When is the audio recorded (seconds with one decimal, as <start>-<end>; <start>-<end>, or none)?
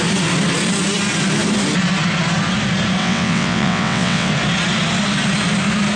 0.0-3.0; 4.3-6.0